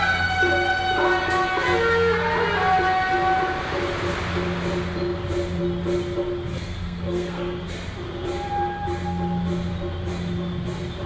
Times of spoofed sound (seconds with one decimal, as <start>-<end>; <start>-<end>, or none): 6.5-7.6